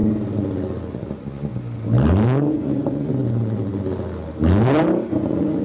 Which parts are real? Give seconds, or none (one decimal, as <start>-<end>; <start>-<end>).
0.0-0.9; 1.5-2.5; 3.2-5.0